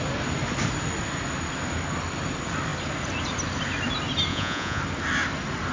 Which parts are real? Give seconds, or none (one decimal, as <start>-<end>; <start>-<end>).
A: 0.0-4.3; 4.8-5.7